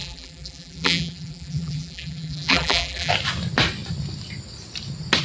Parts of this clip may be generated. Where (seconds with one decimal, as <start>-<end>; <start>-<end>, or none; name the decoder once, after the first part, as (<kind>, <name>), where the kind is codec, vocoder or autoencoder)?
0.0-3.1 (vocoder, BigVGAN v2)